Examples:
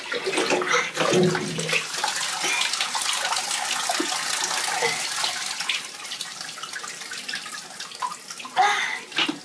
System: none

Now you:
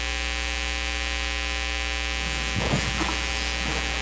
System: none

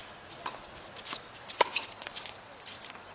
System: none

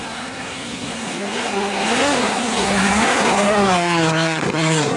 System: codec, SNAC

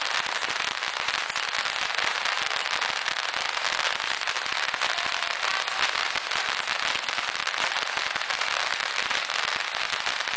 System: none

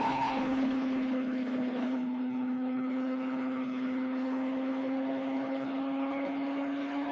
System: codec, HILCodec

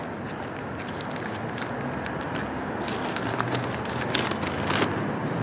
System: none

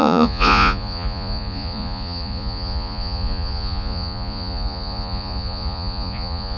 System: vocoder, Vocos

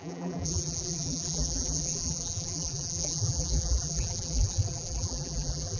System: vocoder, BigVGAN v2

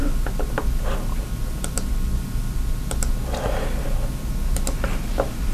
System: none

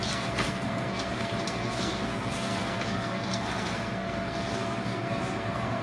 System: codec, SNAC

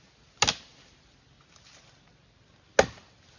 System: none